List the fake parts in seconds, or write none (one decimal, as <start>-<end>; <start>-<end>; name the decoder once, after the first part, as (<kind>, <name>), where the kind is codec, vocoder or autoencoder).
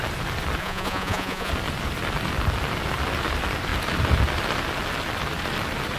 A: 0.6-1.5 (vocoder, Vocos)